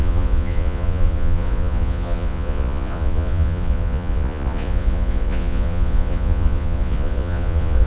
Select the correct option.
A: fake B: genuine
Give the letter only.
A